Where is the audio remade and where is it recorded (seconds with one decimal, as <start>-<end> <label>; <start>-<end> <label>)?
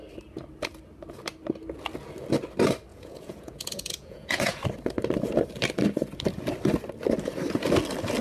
0.0-2.9 recorded; 2.9-4.6 remade; 4.6-8.2 recorded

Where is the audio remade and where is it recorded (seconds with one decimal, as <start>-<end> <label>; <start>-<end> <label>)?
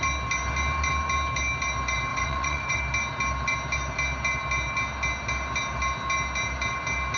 0.0-2.1 recorded; 2.1-2.8 remade; 2.8-7.2 recorded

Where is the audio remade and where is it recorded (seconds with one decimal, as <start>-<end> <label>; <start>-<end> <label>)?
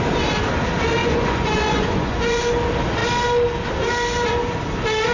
0.0-1.0 recorded; 1.0-2.4 remade; 2.4-5.1 recorded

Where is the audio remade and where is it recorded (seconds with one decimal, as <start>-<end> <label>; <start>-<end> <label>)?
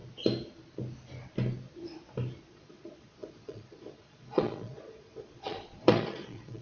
0.0-2.5 recorded; 2.5-6.6 remade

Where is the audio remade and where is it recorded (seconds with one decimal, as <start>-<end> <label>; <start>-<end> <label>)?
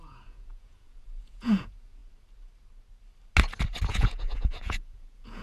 0.0-2.0 remade; 2.0-3.9 recorded; 3.9-5.4 remade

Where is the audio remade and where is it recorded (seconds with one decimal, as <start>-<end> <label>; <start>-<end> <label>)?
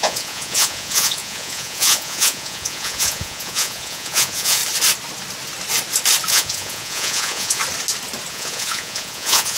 0.0-4.6 remade; 4.6-6.3 recorded; 6.3-7.6 remade; 7.6-8.3 recorded; 8.3-9.6 remade